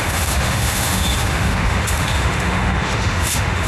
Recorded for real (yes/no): no